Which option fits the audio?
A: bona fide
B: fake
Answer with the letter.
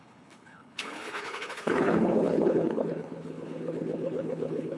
B